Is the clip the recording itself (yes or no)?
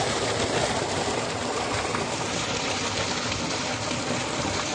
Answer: yes